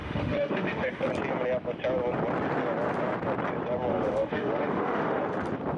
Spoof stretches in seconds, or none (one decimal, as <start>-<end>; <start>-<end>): 0.0-1.1; 3.9-5.2